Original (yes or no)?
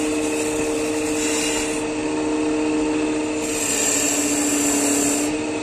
yes